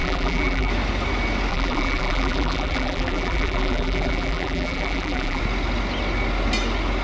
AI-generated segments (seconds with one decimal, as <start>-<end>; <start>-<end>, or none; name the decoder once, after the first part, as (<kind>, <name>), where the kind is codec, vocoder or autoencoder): 0.0-0.7 (vocoder, BigVGAN v2); 1.5-5.4